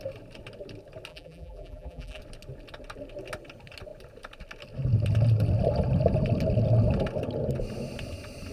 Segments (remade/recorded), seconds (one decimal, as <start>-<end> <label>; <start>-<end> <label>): 0.0-1.1 recorded; 1.1-2.2 remade; 2.2-8.5 recorded